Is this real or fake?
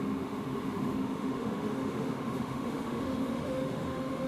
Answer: fake